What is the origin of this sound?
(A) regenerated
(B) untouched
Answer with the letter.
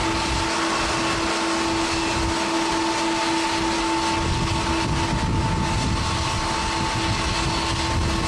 B